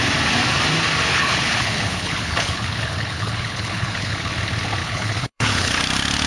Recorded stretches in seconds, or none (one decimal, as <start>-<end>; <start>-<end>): 0.0-1.1; 4.3-4.8; 5.8-6.3